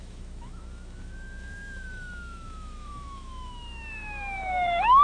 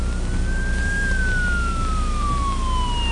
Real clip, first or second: second